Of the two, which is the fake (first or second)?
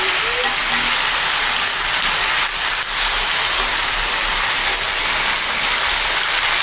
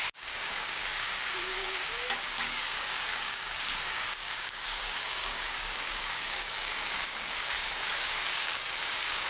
second